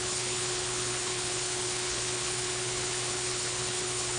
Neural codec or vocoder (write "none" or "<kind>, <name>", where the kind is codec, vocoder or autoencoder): codec, HILCodec